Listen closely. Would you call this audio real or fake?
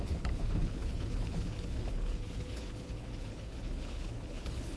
fake